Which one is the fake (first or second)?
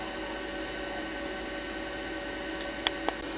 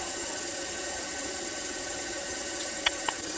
second